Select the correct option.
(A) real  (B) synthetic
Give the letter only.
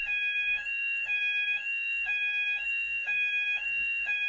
B